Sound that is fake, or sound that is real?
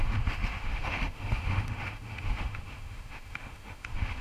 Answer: fake